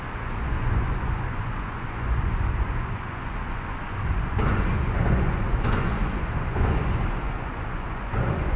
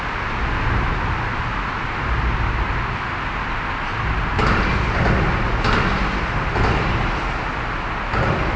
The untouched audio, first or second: second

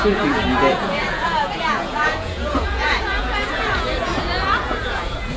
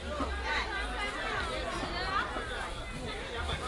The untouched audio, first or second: second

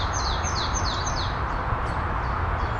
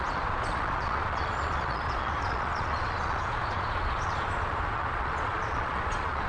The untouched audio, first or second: first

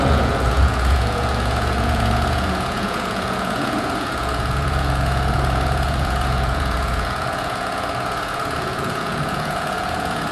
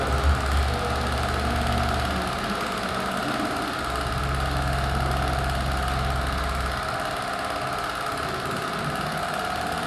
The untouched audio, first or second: second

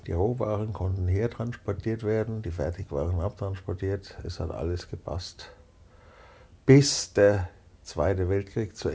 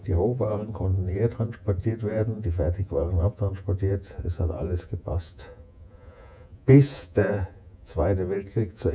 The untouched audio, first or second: first